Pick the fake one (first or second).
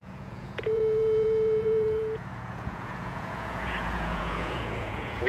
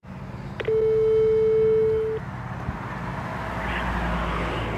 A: first